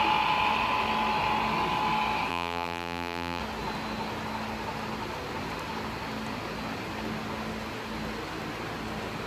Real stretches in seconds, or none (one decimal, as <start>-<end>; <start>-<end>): 0.0-2.3; 3.4-9.3